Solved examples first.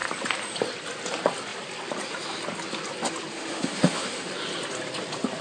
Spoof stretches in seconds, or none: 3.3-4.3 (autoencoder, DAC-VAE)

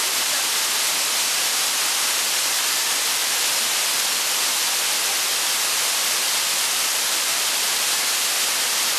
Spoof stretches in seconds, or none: none

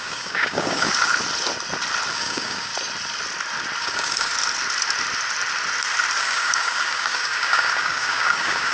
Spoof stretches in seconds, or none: 0.0-0.9 (codec, DAC); 2.1-2.7; 3.8-4.3; 6.2-8.7

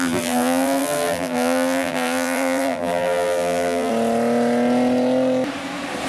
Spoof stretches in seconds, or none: 0.0-3.9 (vocoder, BigVGAN v2)

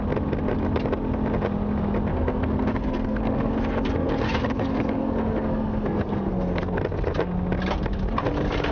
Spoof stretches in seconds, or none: 2.1-6.8 (codec, SNAC)

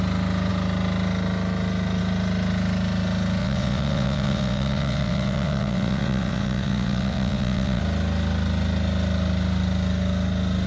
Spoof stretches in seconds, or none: 3.4-7.8 (vocoder, WaveNeXt)

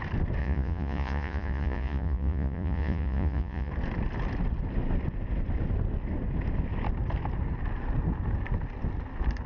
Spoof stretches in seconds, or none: 0.4-3.7 (vocoder, Vocos)